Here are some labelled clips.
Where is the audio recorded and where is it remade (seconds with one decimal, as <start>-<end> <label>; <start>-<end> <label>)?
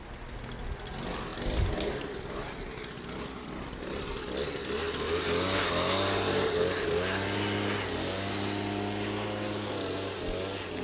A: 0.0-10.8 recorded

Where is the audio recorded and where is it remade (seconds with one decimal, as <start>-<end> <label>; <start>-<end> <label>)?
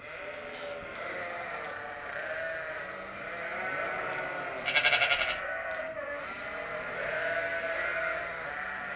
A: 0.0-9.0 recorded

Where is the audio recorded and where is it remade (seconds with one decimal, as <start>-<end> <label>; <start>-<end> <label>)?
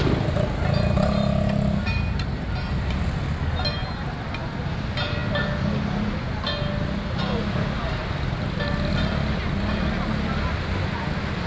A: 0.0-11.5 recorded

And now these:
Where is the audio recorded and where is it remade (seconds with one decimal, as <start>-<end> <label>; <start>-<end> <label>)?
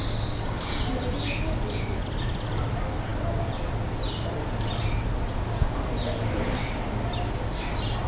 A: 0.0-8.1 recorded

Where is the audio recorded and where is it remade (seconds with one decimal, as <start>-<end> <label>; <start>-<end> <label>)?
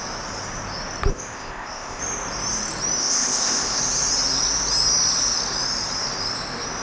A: 0.0-1.1 recorded; 1.1-2.0 remade; 2.0-3.0 recorded; 3.0-3.8 remade; 3.8-6.8 recorded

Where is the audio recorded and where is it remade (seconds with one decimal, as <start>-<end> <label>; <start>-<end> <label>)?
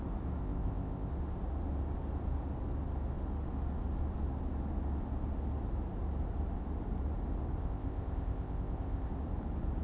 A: 0.0-0.4 recorded; 0.4-1.1 remade; 1.1-7.6 recorded; 7.6-9.1 remade; 9.1-9.8 recorded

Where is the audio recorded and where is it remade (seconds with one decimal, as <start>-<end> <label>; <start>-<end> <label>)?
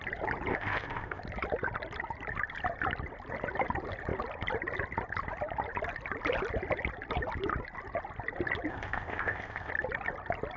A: 0.0-0.5 recorded; 0.5-1.2 remade; 1.2-8.7 recorded; 8.7-9.7 remade; 9.7-10.6 recorded